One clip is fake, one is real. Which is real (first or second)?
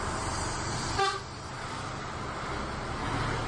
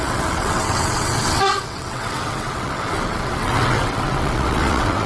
first